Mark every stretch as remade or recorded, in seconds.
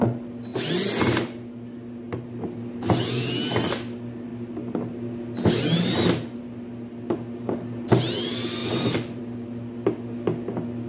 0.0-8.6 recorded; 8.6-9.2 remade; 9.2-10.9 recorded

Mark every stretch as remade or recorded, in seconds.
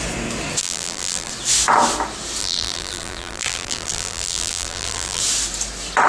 0.0-0.6 recorded; 0.6-1.3 remade; 1.3-2.4 recorded; 2.4-5.2 remade; 5.2-6.1 recorded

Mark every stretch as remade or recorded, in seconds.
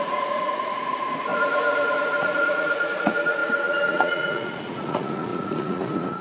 0.0-6.2 remade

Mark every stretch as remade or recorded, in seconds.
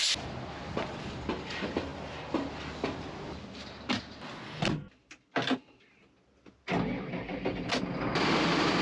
0.0-8.8 recorded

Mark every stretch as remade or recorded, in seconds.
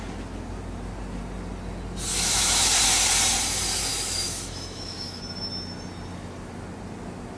0.0-2.1 recorded; 2.1-2.7 remade; 2.7-3.9 recorded; 3.9-5.2 remade; 5.2-7.4 recorded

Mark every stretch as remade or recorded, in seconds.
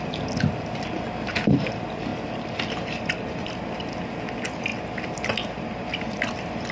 0.0-6.7 recorded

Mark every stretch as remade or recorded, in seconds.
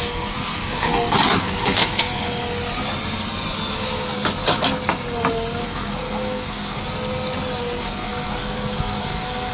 0.0-0.9 remade; 0.9-1.4 recorded; 1.4-2.4 remade; 2.4-5.6 recorded; 5.6-6.8 remade; 6.8-7.8 recorded; 7.8-9.5 remade